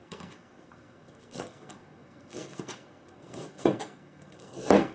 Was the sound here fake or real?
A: fake